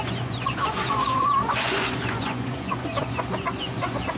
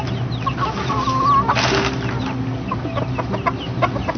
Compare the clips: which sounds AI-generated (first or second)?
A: first